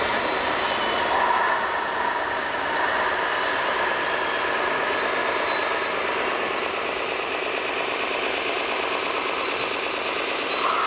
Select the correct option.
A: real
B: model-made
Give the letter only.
A